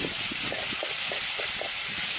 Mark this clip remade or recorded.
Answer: recorded